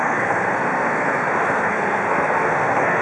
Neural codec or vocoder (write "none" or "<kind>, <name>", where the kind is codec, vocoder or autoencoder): codec, SNAC